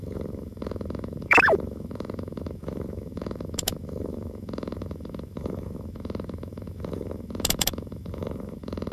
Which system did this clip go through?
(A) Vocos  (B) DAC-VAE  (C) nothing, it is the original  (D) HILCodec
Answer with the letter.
B